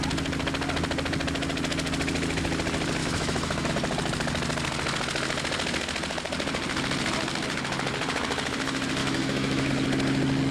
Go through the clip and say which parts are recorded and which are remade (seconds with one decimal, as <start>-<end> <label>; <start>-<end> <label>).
0.0-3.0 recorded; 3.0-3.7 remade; 3.7-9.0 recorded; 9.0-9.7 remade; 9.7-10.5 recorded

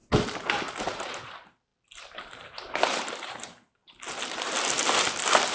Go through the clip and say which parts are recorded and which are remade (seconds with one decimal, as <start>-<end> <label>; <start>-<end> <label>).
0.0-0.8 recorded; 0.8-1.7 remade; 1.7-2.2 recorded; 2.2-3.8 remade; 3.8-5.5 recorded

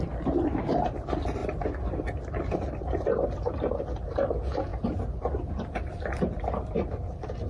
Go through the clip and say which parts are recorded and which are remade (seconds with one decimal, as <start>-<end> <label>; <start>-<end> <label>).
0.0-7.5 recorded

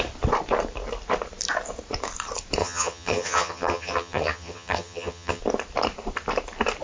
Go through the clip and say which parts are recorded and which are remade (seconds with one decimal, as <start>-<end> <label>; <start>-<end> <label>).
0.0-2.6 recorded; 2.6-5.4 remade; 5.4-6.8 recorded